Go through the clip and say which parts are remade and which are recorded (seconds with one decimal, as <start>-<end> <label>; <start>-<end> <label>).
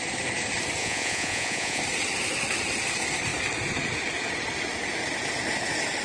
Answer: 0.0-0.8 recorded; 0.8-1.8 remade; 1.8-6.0 recorded